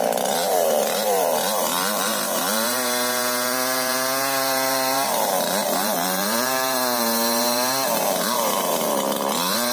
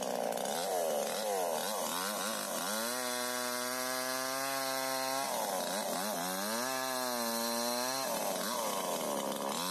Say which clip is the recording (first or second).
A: second